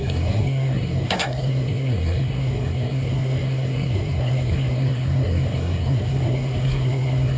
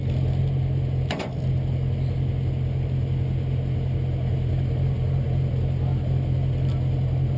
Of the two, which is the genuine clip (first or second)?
second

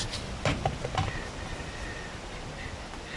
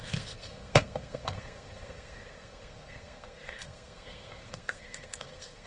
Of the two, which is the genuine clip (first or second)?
first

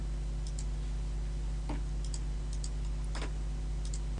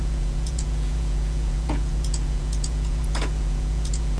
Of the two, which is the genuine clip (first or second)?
first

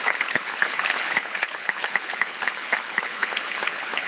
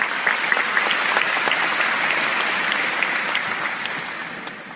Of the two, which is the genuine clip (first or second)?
second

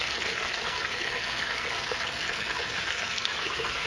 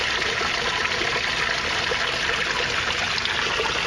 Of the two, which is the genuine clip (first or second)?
second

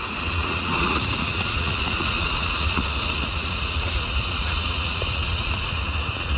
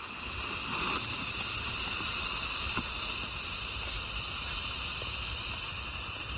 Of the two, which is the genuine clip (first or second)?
second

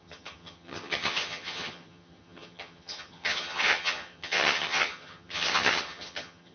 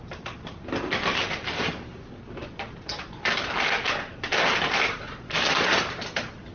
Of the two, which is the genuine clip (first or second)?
second